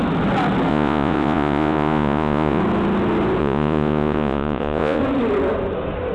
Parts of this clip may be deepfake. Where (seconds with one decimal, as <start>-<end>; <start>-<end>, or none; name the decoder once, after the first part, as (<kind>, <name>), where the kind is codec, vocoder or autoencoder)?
0.7-2.6 (vocoder, Vocos); 3.4-5.0